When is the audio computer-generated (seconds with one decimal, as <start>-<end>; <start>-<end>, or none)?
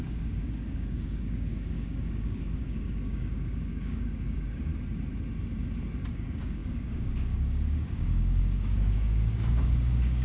0.0-4.7; 6.1-10.2